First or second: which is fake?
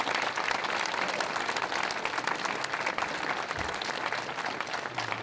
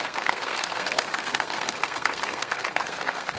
second